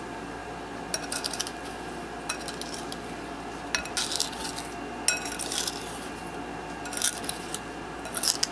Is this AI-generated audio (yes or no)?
no